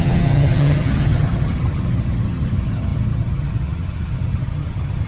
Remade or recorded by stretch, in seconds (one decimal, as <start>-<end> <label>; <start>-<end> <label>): 0.0-5.1 remade

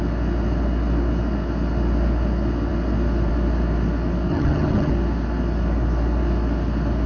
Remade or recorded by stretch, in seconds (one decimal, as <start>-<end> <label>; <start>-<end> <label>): 0.0-4.3 recorded; 4.3-4.9 remade; 4.9-7.1 recorded

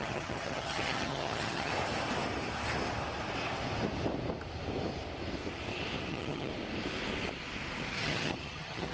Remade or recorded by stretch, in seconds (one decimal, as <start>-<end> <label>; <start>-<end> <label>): 0.0-1.7 remade; 1.7-6.1 recorded; 6.1-6.5 remade; 6.5-7.9 recorded; 7.9-8.9 remade

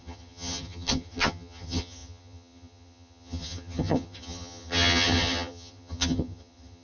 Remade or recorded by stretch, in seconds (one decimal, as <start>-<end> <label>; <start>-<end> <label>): 0.0-6.8 remade